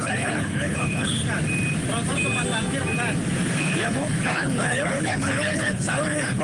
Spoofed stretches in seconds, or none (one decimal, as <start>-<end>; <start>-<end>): 0.0-1.2; 3.6-6.4